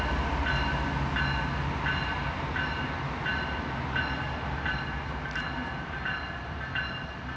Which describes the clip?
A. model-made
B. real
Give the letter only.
B